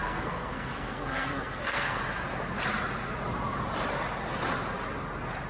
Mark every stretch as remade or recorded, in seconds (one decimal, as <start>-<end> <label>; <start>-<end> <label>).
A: 0.0-2.0 remade; 2.0-5.5 recorded